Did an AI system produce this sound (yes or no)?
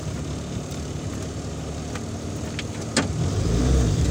no